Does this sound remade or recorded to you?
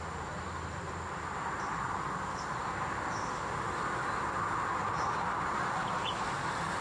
recorded